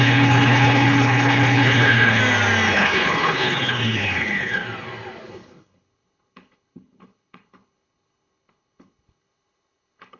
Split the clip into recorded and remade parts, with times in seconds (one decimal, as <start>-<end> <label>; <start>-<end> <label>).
0.0-2.2 remade; 2.2-2.7 recorded; 2.7-4.6 remade; 4.6-5.3 recorded; 5.3-10.2 remade